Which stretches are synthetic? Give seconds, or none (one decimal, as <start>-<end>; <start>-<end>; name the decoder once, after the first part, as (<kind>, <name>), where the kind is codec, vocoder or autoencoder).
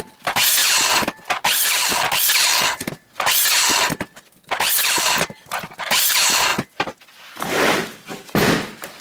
0.0-0.6 (vocoder, BigVGAN v2); 5.0-6.5; 8.1-9.0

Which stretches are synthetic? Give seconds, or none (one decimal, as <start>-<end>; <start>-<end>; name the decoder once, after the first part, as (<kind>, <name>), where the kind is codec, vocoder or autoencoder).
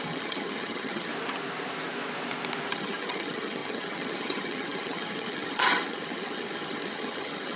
0.0-1.1 (vocoder, HiFi-GAN); 2.7-7.6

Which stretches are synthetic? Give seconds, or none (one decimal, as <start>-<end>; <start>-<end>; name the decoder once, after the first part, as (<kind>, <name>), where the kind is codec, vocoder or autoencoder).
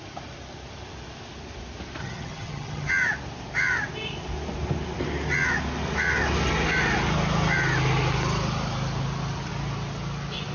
2.0-2.9 (vocoder, HiFi-GAN)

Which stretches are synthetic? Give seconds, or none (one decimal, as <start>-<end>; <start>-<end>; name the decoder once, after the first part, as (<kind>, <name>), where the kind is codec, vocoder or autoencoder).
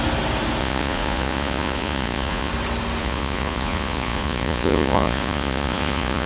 0.6-2.5 (vocoder, Vocos); 3.0-6.3